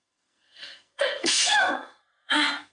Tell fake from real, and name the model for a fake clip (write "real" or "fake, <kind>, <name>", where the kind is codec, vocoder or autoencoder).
fake, codec, SNAC